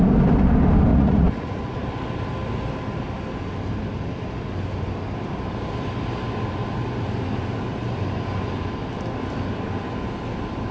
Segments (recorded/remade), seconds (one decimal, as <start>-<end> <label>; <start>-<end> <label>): 0.0-0.9 recorded; 0.9-1.9 remade; 1.9-10.7 recorded